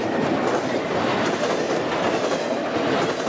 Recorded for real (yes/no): yes